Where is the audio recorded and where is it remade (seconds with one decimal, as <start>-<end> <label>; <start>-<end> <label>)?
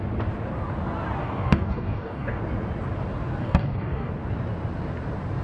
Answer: 0.0-1.2 recorded; 1.2-2.4 remade; 2.4-3.4 recorded; 3.4-4.1 remade; 4.1-5.4 recorded